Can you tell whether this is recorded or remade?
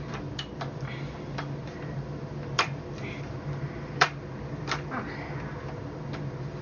remade